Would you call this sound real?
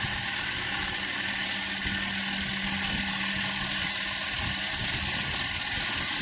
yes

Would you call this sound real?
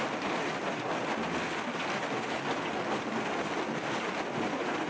yes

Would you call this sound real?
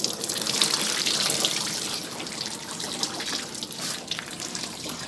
no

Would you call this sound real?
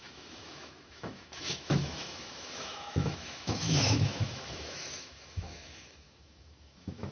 no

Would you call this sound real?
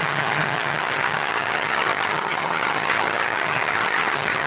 no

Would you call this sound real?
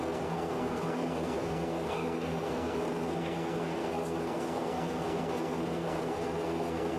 no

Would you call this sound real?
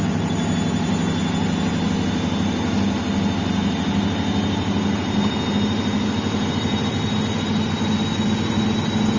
yes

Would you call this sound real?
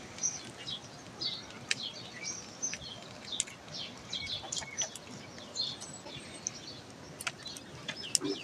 yes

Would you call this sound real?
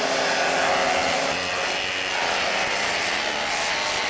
yes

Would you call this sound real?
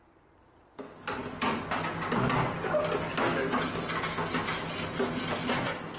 yes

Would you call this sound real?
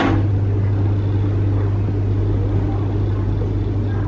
yes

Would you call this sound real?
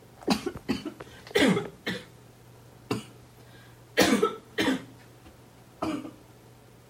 yes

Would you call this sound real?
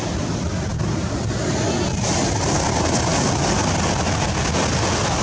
yes